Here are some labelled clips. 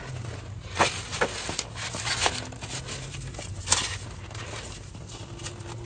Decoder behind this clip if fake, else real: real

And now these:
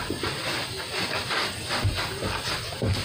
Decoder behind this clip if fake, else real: real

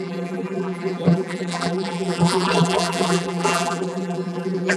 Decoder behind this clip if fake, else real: fake, vocoder, BigVGAN v2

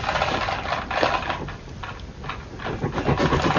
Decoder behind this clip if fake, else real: real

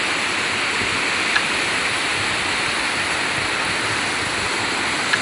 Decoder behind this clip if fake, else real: real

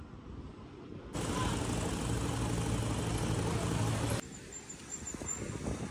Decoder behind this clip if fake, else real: real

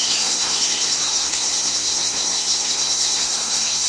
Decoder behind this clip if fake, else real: fake, codec, SNAC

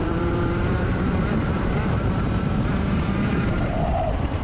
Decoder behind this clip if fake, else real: fake, vocoder, BigVGAN v2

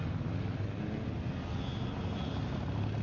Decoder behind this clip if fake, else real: real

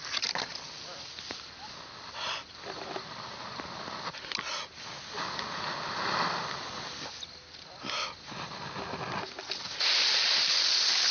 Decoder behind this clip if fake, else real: real